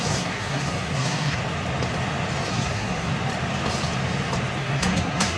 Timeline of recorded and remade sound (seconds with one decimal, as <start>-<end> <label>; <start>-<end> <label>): 0.0-1.4 remade; 1.4-2.5 recorded; 2.5-3.1 remade; 3.1-4.6 recorded; 4.6-5.4 remade